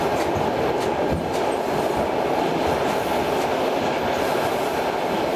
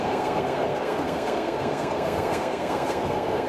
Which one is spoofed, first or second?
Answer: second